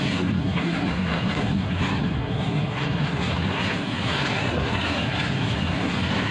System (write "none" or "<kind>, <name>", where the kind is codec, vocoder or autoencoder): codec, SNAC